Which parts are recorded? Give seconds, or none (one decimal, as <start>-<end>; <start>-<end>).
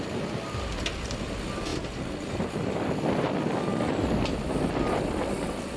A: 0.0-5.8